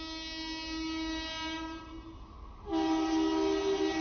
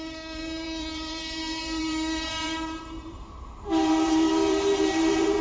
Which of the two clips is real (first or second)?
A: first